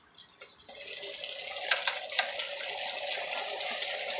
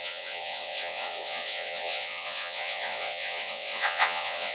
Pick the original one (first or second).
first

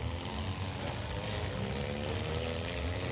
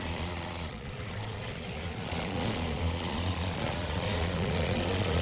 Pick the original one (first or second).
first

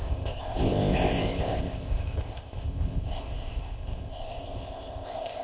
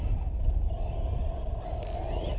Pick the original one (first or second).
second